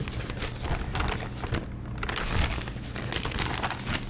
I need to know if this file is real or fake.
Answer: real